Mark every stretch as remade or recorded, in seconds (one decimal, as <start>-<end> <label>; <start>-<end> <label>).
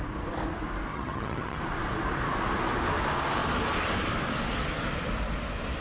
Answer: 0.0-0.9 recorded; 0.9-1.6 remade; 1.6-5.8 recorded